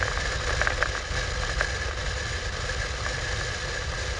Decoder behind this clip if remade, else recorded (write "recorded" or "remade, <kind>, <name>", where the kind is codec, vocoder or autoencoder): recorded